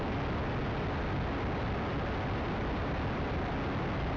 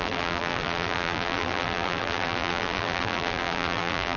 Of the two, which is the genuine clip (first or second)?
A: first